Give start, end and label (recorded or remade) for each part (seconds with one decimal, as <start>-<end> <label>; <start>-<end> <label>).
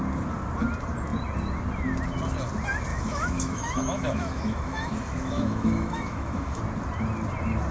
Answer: 0.0-2.9 recorded; 2.9-6.6 remade; 6.6-7.7 recorded